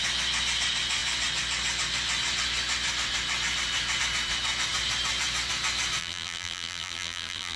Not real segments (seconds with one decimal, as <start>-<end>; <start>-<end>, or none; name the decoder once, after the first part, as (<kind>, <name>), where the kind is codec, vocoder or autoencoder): 6.0-7.6 (vocoder, BigVGAN v2)